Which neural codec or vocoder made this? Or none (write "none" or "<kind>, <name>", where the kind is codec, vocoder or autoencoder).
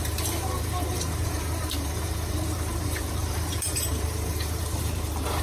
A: vocoder, BigVGAN v2